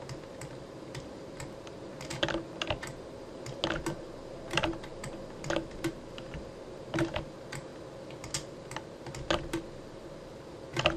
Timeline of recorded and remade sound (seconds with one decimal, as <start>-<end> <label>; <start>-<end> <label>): 0.0-11.0 recorded